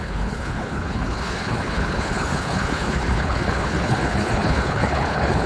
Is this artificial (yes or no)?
yes